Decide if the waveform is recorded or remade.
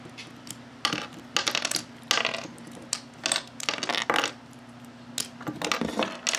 recorded